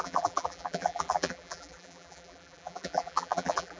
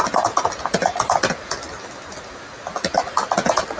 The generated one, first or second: first